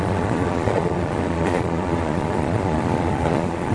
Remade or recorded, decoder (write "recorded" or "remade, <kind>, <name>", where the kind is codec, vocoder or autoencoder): remade, vocoder, Vocos